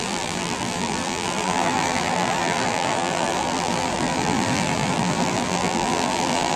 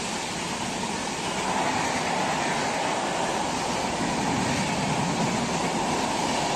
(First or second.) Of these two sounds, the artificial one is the first